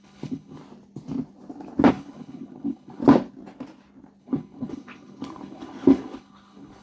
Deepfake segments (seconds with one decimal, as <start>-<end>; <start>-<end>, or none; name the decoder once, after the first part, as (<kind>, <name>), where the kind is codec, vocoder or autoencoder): 0.0-0.6 (codec, HILCodec); 1.9-3.0; 4.2-6.8